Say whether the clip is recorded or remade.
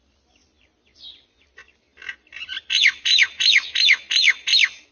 recorded